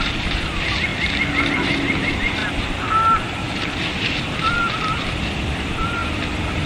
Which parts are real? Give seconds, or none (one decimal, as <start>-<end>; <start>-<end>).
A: 0.9-1.5; 6.0-6.7